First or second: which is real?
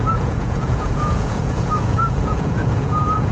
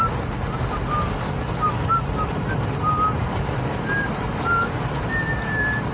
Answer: second